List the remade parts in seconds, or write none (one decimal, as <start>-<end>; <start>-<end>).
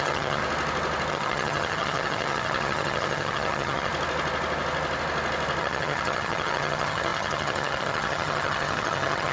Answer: 0.0-0.4; 1.1-3.9; 5.6-9.3